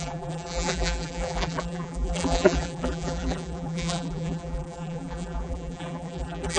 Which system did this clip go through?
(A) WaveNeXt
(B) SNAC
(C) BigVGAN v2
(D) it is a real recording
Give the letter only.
C